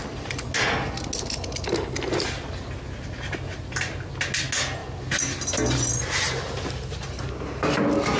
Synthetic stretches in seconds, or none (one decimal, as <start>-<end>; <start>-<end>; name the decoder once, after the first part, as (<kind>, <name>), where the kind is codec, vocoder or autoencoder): none